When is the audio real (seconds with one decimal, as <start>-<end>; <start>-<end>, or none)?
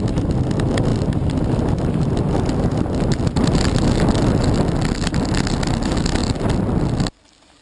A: 0.0-7.6